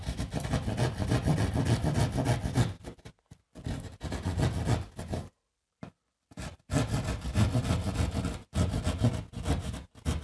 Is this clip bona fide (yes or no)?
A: yes